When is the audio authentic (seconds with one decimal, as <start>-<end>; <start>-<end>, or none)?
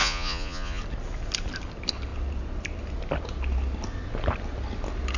0.8-5.2